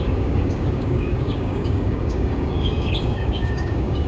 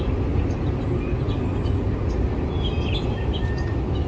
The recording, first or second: second